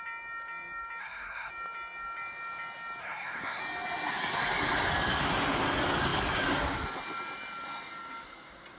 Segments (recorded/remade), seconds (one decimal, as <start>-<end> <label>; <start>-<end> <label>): 0.0-1.0 recorded; 1.0-1.5 remade; 1.5-3.0 recorded; 3.0-3.6 remade; 3.6-8.8 recorded